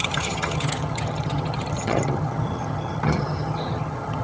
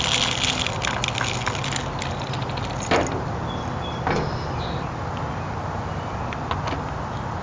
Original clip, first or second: second